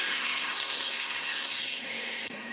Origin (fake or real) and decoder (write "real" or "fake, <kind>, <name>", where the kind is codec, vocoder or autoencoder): fake, codec, SNAC